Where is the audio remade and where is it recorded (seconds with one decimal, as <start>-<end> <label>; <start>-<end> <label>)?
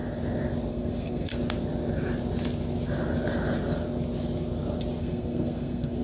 0.0-0.7 recorded; 0.7-1.4 remade; 1.4-5.0 recorded; 5.0-6.0 remade